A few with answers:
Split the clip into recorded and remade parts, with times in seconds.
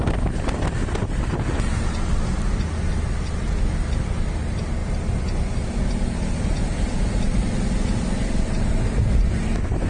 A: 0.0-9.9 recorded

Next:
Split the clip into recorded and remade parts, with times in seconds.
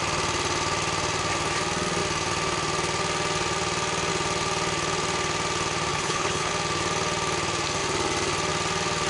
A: 0.0-5.9 recorded; 5.9-6.5 remade; 6.5-9.1 recorded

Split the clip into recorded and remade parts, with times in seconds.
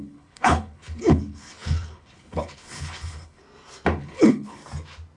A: 0.0-3.4 remade; 3.4-4.0 recorded; 4.0-4.6 remade; 4.6-5.2 recorded